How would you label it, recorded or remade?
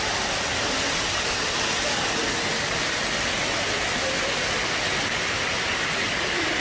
recorded